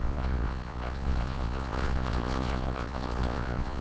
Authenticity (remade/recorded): remade